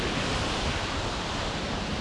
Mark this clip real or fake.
real